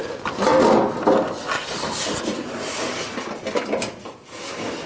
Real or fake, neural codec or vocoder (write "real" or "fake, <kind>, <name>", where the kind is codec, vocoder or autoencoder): real